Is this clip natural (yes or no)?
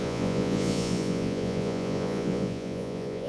no